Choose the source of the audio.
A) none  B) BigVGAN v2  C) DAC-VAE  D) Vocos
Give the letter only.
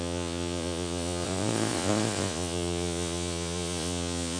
D